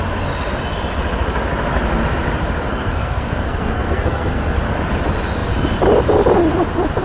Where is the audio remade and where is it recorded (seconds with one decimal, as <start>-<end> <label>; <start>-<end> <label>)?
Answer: 0.0-2.7 recorded; 2.7-4.6 remade; 4.6-7.0 recorded